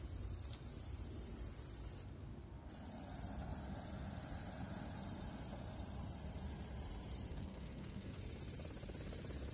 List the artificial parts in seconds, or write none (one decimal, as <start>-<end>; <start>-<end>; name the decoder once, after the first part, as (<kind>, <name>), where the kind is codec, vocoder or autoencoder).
7.3-8.2 (codec, SNAC)